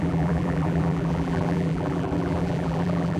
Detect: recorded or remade remade